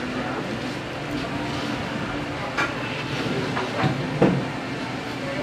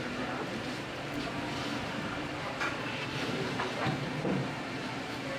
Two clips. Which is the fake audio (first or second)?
second